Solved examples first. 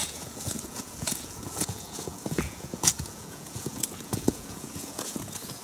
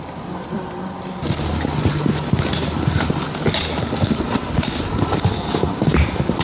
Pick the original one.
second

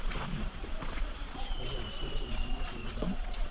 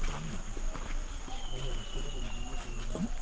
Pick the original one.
second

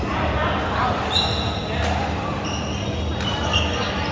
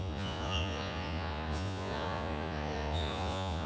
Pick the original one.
first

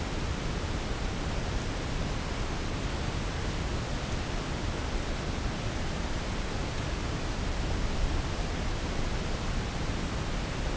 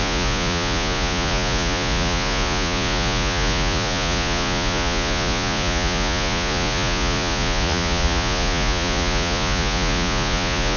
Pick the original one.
first